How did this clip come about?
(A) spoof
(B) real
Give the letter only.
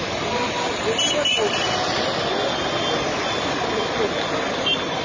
B